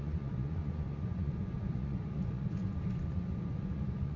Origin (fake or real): fake